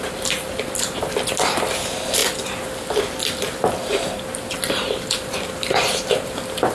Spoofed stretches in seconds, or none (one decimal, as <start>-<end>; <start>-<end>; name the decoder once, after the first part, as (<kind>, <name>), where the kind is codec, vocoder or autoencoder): 0.0-6.7 (vocoder, BigVGAN v2)